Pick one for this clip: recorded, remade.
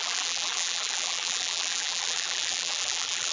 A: remade